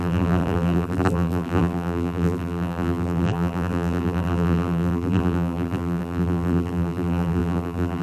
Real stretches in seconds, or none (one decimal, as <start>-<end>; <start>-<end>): none